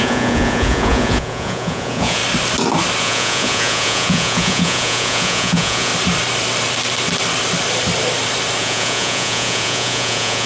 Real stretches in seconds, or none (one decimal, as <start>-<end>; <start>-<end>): 2.2-3.0; 5.9-8.6